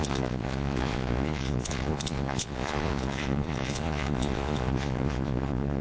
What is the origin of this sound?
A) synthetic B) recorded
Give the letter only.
A